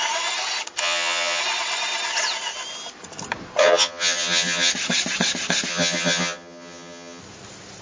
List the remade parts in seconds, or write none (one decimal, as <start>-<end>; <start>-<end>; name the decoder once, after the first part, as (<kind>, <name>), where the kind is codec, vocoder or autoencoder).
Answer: 0.8-1.4 (vocoder, HiFi-GAN); 3.6-4.7; 5.7-7.2